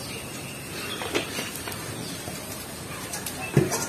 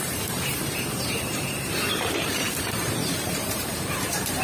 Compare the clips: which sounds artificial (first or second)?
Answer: second